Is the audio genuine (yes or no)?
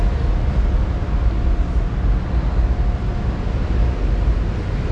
yes